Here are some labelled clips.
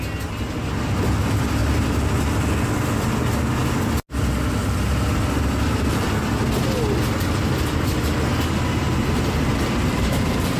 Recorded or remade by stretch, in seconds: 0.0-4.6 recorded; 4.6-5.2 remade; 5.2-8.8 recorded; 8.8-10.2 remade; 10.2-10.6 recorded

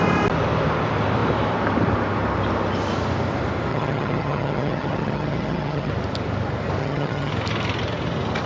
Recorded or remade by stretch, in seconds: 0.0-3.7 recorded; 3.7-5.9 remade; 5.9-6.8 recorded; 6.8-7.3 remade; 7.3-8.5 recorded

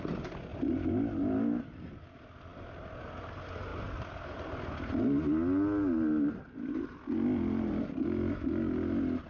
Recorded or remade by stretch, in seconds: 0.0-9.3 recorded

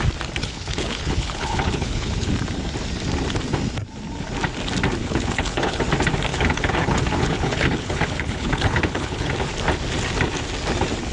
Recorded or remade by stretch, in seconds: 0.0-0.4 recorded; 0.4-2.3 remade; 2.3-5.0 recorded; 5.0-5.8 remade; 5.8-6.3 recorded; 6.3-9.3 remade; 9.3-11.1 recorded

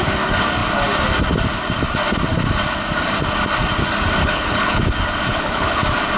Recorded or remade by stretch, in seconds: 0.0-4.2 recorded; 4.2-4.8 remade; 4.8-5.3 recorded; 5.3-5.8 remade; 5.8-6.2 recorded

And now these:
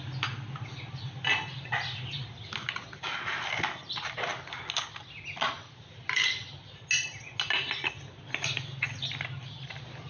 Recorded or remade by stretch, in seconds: 0.0-10.1 recorded

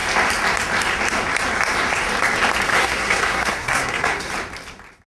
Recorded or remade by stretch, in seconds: 0.0-2.7 recorded; 2.7-4.3 remade; 4.3-5.1 recorded

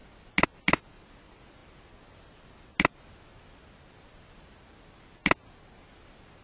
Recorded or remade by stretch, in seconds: 0.0-6.4 recorded